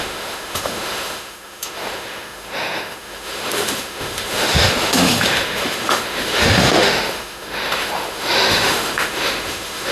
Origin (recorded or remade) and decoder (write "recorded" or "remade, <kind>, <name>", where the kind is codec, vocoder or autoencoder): remade, autoencoder, DAC-VAE